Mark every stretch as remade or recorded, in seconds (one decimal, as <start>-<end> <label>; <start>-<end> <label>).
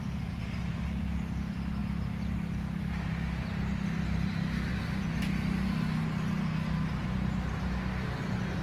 0.0-8.6 recorded